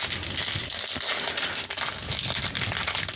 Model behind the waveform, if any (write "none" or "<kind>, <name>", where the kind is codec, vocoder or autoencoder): none